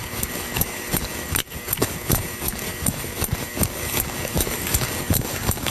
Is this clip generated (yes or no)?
yes